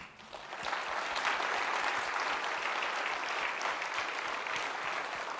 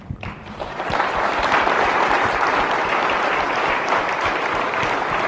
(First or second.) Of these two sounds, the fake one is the second